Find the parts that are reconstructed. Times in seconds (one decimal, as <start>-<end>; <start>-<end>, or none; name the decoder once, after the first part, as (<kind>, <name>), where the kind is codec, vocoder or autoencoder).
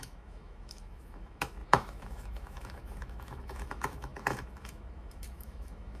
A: 0.0-6.0 (autoencoder, DAC-VAE)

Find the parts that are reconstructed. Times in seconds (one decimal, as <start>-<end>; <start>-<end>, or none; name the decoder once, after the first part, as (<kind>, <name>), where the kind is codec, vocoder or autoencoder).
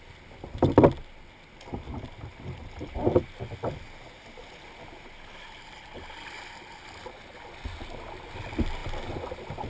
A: none